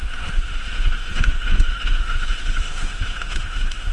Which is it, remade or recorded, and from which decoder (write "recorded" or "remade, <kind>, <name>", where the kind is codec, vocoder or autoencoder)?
remade, autoencoder, DAC-VAE